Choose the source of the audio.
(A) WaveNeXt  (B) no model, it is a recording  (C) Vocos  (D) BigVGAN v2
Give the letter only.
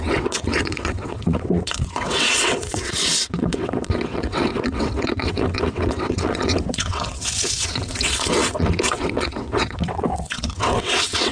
A